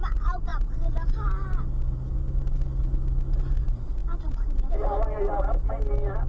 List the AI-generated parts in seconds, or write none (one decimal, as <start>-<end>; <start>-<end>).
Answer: none

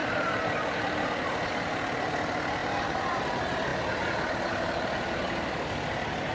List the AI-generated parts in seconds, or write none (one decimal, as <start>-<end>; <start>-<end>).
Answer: 0.0-1.5; 2.6-3.2

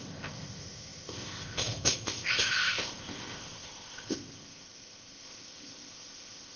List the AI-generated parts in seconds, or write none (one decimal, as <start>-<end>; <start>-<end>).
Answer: 0.0-6.6

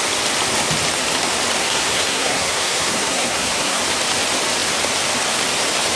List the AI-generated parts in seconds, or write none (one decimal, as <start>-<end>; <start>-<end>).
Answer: 1.6-3.8

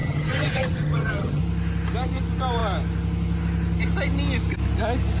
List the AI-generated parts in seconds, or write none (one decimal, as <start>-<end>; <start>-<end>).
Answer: 0.0-1.4

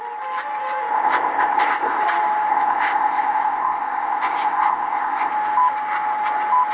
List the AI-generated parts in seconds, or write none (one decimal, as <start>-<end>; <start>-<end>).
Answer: 0.9-2.0; 2.5-5.3

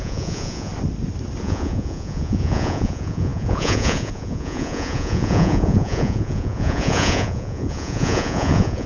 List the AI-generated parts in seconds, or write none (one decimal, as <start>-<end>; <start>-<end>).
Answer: 0.0-0.7; 1.4-8.9